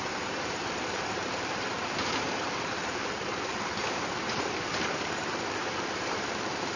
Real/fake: fake